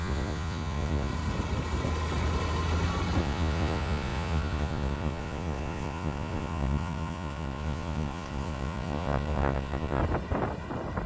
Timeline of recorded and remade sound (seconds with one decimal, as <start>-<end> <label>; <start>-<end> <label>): 0.0-1.1 remade; 1.1-3.2 recorded; 3.2-10.0 remade; 10.0-11.1 recorded